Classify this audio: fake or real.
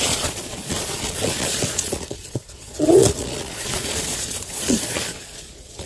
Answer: fake